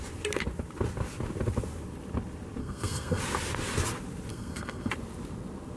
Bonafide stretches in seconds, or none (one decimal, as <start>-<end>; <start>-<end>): 0.0-2.6; 3.2-4.3; 4.9-5.8